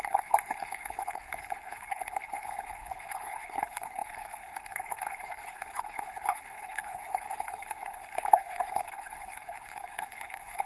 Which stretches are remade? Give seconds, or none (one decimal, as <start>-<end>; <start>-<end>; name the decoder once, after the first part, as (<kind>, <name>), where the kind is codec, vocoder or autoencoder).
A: 0.0-10.7 (codec, HILCodec)